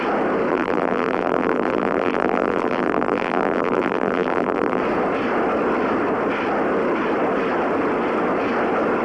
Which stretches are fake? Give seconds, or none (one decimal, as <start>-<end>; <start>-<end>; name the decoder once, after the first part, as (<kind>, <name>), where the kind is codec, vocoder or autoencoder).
0.5-4.8 (vocoder, BigVGAN v2)